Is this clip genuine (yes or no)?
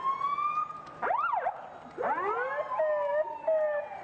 yes